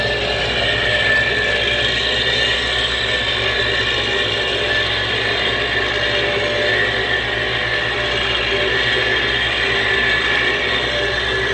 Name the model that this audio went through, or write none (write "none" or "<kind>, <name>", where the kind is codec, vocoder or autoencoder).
none